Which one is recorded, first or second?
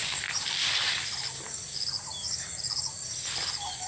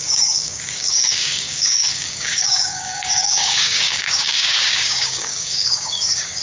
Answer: first